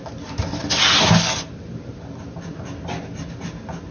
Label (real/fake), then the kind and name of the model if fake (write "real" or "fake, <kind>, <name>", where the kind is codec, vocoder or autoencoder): real